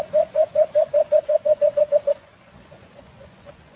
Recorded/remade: remade